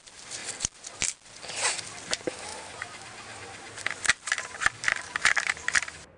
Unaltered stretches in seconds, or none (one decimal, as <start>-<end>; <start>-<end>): 0.4-1.4; 2.5-6.2